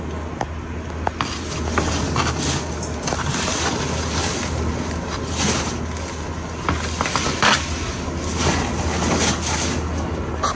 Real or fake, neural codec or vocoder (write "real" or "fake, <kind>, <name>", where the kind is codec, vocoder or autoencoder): real